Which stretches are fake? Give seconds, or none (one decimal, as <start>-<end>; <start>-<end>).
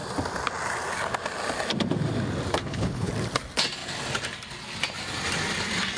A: 2.6-3.1